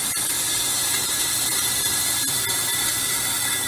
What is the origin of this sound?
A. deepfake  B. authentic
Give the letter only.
B